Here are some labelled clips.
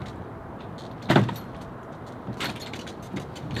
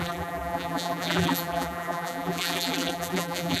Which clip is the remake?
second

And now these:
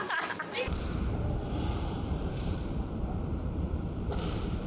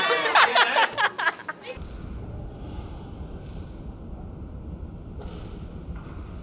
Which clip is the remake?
first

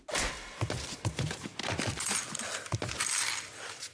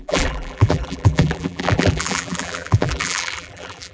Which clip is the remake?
second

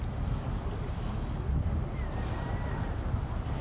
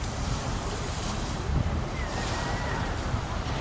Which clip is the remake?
second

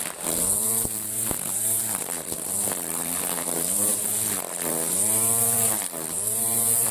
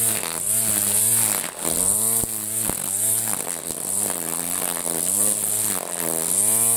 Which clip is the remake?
first